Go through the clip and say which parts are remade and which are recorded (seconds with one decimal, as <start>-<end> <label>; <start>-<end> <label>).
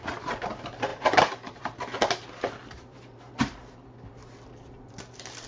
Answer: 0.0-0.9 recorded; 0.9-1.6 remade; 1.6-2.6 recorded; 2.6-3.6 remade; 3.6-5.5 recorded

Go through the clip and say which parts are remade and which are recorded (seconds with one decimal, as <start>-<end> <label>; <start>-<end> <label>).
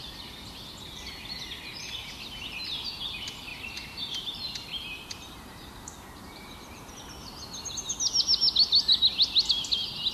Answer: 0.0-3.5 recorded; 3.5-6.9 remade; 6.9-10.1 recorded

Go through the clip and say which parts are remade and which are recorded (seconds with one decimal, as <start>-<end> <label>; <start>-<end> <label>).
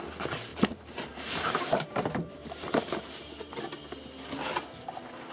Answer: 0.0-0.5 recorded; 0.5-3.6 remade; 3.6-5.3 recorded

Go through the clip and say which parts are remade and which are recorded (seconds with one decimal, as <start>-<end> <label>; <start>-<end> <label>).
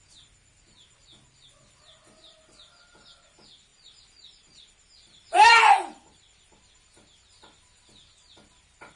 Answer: 0.0-3.7 recorded; 3.7-6.8 remade; 6.8-9.0 recorded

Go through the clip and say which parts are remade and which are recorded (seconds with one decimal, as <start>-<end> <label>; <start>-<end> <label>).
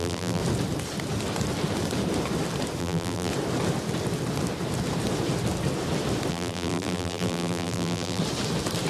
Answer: 0.0-0.4 remade; 0.4-2.8 recorded; 2.8-3.3 remade; 3.3-6.3 recorded; 6.3-8.2 remade; 8.2-8.9 recorded